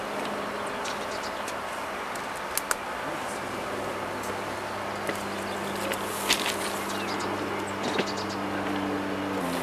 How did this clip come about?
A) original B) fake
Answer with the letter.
A